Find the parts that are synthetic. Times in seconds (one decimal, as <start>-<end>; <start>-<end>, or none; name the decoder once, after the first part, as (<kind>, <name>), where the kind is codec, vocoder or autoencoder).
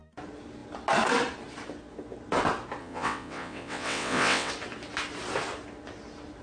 2.8-4.5 (vocoder, WaveNeXt)